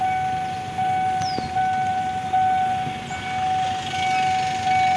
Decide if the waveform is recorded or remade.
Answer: recorded